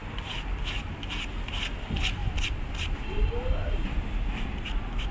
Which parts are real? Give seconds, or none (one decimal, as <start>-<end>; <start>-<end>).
0.0-5.1